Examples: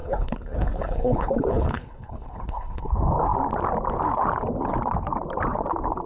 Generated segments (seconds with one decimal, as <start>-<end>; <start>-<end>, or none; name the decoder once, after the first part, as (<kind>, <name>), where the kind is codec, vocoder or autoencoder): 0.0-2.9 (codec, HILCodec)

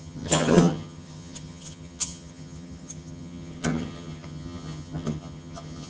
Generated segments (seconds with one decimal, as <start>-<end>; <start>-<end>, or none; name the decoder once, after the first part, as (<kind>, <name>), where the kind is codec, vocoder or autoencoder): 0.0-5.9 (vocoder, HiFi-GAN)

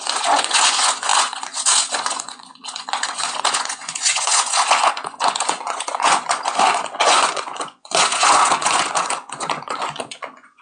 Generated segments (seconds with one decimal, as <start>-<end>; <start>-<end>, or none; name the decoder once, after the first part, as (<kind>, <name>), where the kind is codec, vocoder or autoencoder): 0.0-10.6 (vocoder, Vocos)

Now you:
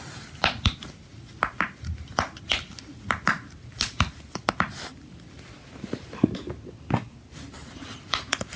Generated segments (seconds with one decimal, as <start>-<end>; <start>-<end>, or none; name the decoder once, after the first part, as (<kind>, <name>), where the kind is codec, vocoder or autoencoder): none